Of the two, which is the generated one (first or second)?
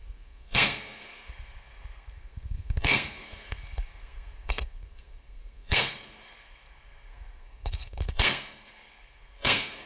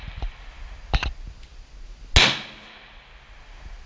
first